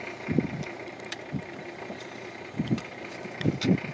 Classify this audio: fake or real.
real